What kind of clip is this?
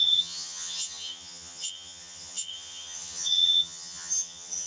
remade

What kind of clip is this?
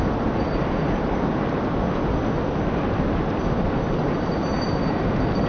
recorded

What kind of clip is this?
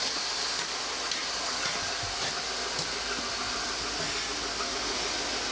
recorded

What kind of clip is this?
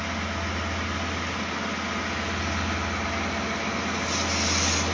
recorded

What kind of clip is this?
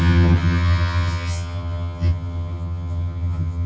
remade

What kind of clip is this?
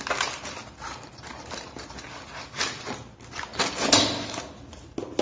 recorded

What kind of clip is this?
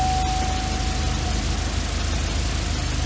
recorded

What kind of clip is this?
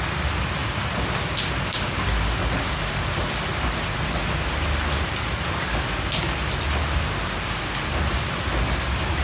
recorded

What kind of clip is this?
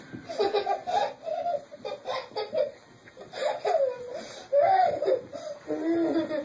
recorded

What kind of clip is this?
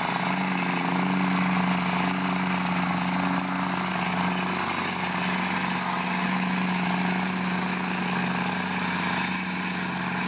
recorded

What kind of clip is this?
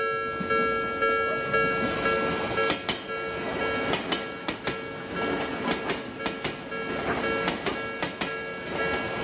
recorded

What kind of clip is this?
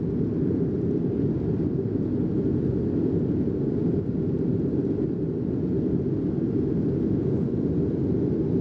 recorded